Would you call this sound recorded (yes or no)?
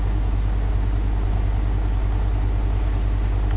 yes